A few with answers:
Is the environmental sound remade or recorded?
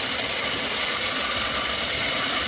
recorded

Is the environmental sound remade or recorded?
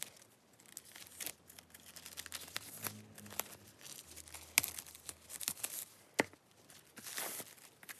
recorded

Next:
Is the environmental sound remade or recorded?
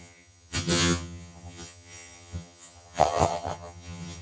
remade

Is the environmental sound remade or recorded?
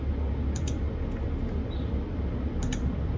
recorded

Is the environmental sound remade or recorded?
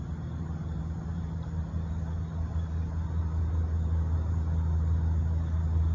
recorded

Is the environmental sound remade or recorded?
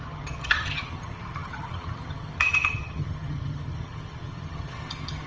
remade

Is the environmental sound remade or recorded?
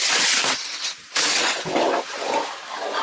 recorded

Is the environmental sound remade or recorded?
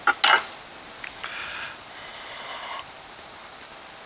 recorded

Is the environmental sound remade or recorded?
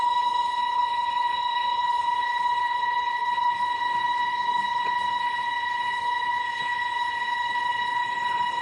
remade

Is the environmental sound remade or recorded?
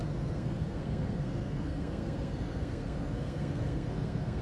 remade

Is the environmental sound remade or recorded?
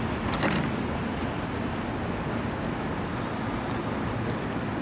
recorded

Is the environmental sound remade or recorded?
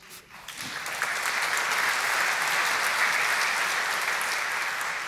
recorded